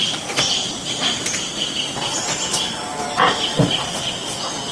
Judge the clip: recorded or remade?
remade